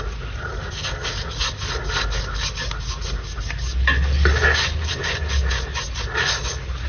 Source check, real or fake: real